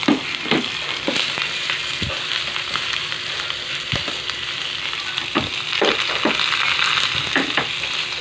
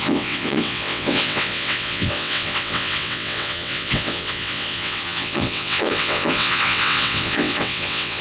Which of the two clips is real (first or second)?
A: first